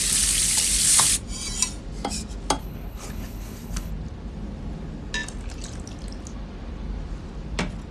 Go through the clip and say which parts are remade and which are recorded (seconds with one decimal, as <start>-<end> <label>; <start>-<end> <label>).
0.0-2.6 recorded; 2.6-3.9 remade; 3.9-7.9 recorded